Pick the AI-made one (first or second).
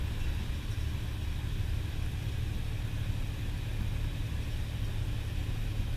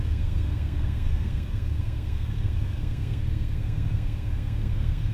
second